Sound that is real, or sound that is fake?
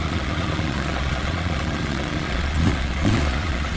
fake